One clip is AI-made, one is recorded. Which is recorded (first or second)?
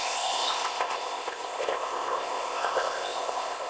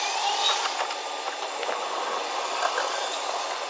second